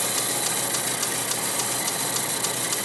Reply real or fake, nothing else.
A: real